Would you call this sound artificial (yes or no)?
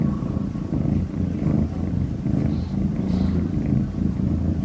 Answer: yes